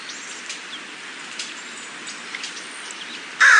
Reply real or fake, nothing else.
fake